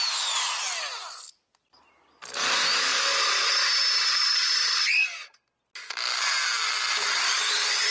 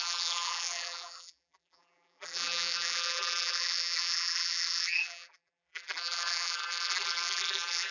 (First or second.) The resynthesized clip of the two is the second